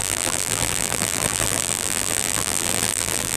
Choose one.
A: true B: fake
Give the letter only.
B